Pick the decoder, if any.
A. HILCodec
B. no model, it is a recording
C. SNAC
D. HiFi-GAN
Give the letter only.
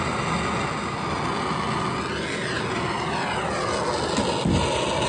B